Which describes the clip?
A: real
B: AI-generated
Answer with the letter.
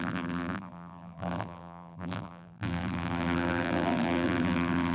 B